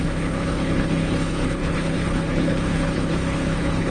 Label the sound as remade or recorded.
remade